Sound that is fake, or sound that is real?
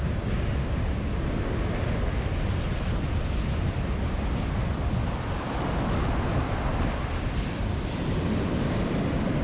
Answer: real